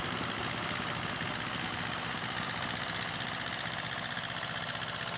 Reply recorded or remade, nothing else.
recorded